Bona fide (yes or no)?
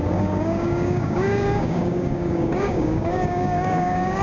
no